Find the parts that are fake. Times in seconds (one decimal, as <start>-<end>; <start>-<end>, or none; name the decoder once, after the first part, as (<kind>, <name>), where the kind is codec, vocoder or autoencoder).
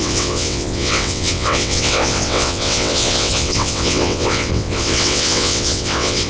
0.0-6.3 (vocoder, WaveNeXt)